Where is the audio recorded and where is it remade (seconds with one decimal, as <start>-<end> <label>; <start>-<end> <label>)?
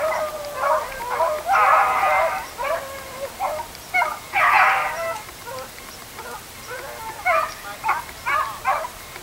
0.0-4.1 recorded; 4.1-4.7 remade; 4.7-9.2 recorded